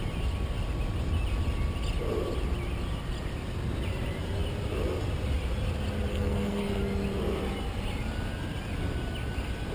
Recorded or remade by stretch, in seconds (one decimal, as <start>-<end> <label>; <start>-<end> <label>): 0.0-6.1 recorded; 6.1-6.8 remade; 6.8-9.7 recorded